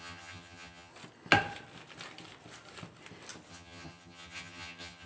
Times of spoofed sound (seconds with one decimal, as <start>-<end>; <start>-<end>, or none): 0.0-0.9; 3.5-5.1